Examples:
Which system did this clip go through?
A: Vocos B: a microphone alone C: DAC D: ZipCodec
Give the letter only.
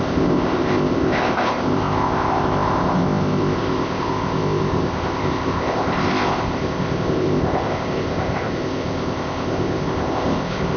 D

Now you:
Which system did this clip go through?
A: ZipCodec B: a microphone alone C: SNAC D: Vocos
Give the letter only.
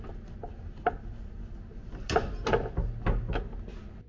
B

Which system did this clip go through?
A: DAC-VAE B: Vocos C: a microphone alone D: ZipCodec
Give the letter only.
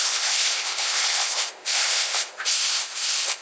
D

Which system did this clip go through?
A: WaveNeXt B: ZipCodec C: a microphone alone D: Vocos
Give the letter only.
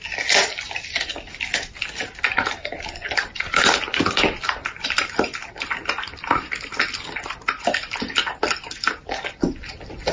C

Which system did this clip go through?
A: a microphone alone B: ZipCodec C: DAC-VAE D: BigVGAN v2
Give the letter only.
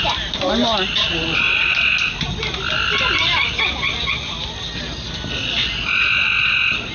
A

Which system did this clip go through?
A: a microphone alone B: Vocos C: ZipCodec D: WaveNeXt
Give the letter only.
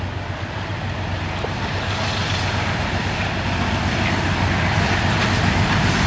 A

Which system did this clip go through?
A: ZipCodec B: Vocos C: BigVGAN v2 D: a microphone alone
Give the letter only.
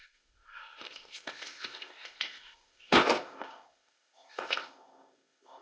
A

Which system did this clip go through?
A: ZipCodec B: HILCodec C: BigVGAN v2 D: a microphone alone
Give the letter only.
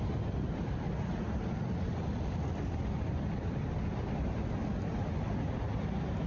D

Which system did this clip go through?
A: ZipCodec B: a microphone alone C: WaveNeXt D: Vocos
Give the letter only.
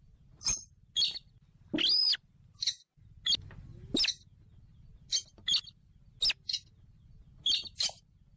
B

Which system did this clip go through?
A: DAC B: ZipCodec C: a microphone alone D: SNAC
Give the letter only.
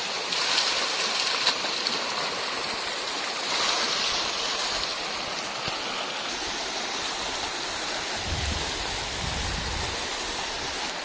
C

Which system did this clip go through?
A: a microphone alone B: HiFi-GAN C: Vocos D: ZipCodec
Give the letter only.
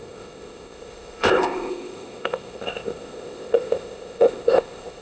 D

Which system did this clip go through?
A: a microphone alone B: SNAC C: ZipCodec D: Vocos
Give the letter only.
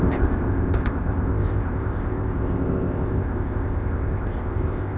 C